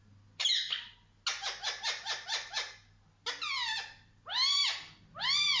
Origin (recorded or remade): recorded